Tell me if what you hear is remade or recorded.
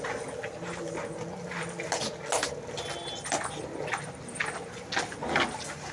recorded